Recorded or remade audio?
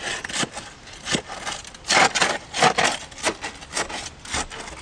recorded